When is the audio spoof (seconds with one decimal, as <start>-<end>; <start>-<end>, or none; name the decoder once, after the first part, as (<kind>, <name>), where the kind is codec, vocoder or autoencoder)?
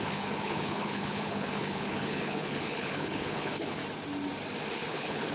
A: 0.0-3.8 (codec, HILCodec); 4.7-5.3